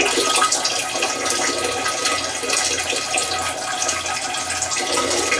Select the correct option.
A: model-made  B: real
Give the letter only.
B